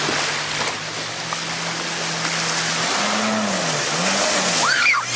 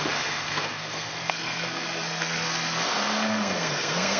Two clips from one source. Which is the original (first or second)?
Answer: first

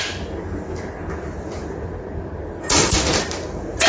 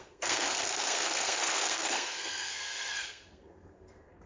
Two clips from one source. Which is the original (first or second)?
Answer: first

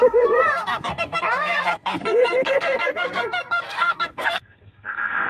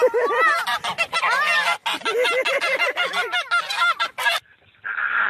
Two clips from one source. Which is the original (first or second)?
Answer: second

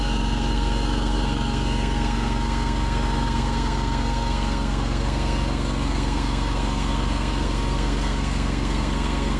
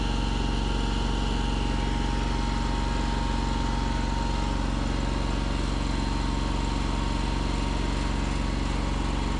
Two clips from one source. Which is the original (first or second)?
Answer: second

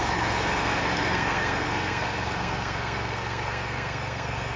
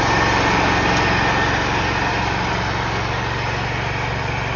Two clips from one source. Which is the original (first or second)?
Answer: second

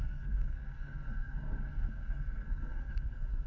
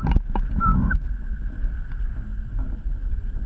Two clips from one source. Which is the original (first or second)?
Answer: second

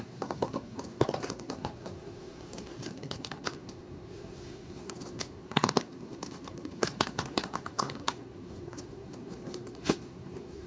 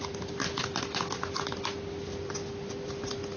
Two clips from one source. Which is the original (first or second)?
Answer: second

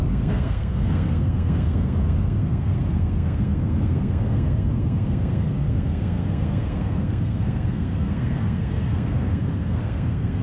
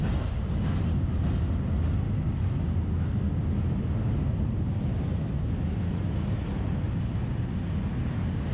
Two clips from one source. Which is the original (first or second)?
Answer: second